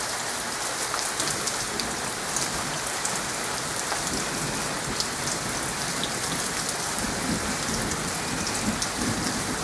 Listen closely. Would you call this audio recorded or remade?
recorded